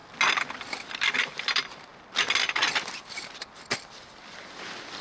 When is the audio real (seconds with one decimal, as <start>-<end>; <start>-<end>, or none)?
0.0-0.6